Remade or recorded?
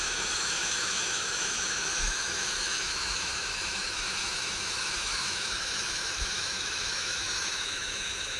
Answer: remade